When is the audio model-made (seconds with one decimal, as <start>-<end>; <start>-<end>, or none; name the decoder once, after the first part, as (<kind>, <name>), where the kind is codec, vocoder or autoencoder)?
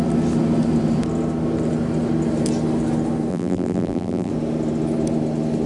3.3-4.3 (vocoder, BigVGAN v2)